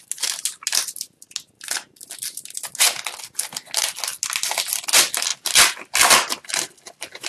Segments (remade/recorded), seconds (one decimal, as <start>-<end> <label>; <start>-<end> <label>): 0.0-7.3 recorded